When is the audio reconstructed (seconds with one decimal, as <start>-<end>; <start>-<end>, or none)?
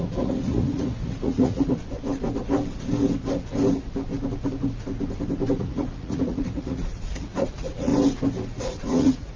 0.0-1.8; 5.6-7.9; 8.6-9.4